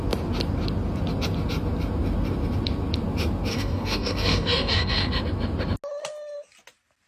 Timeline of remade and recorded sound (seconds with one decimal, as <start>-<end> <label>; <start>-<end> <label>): 0.0-3.5 recorded; 3.5-5.1 remade; 5.1-7.1 recorded